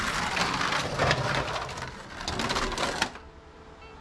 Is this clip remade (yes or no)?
no